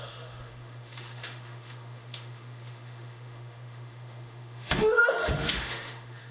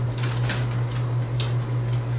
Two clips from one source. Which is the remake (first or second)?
first